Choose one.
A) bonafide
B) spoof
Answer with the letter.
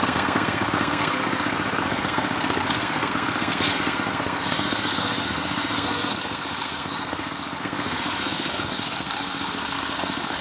B